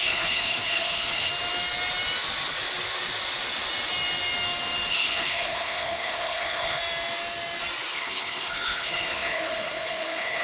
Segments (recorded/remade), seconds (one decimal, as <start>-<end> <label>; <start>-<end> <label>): 0.0-1.3 remade; 1.3-4.9 recorded; 4.9-6.8 remade; 6.8-7.9 recorded; 7.9-10.4 remade